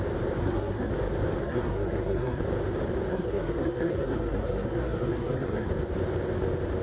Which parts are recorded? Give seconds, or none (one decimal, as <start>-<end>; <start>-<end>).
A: 0.0-0.4; 0.9-1.4; 2.4-3.1; 5.7-6.8